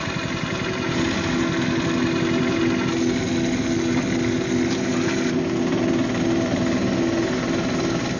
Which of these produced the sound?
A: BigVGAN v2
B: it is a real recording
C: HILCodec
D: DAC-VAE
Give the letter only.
B